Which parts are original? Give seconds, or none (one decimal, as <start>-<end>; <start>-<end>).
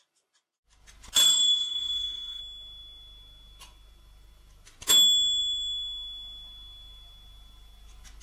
0.0-1.2; 2.4-8.2